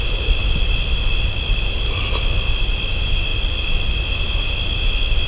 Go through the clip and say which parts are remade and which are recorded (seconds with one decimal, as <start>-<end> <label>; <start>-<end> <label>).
0.0-5.3 recorded